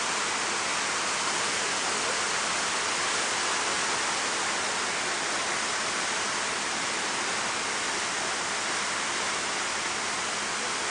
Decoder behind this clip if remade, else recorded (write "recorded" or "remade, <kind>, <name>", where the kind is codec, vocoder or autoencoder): recorded